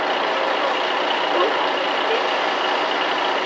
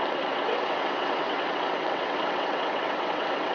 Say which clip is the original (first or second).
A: first